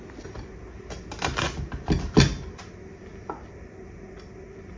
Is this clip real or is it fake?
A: real